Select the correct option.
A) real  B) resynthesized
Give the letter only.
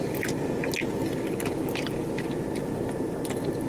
A